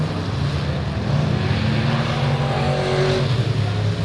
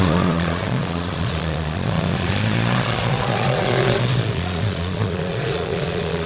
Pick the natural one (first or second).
first